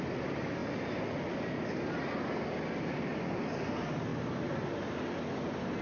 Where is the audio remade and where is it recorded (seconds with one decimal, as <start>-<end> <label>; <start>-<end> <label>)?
0.0-5.8 recorded